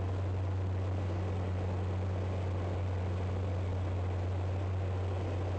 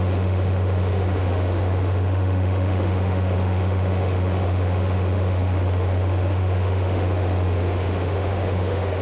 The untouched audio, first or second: first